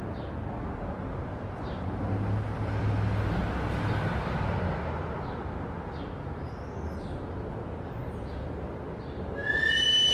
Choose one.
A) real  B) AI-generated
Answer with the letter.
A